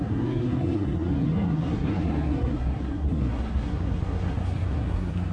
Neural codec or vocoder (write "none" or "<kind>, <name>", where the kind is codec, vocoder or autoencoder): codec, SNAC